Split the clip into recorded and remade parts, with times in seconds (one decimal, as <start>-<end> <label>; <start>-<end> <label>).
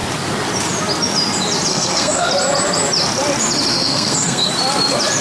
0.0-1.7 recorded; 1.7-2.3 remade; 2.3-3.7 recorded; 3.7-4.5 remade; 4.5-5.2 recorded